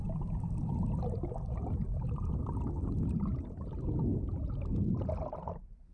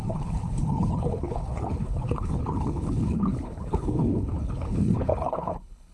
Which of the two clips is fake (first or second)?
second